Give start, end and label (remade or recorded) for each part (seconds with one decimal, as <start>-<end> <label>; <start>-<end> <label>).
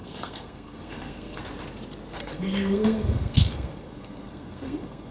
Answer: 0.0-1.4 remade; 1.4-2.1 recorded; 2.1-5.1 remade